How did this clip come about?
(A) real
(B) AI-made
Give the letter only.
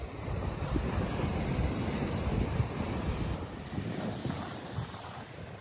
A